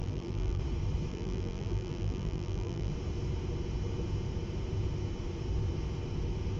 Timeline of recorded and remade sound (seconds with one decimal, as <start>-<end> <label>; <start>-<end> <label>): 0.0-0.6 remade; 0.6-1.1 recorded; 1.1-2.9 remade; 2.9-6.6 recorded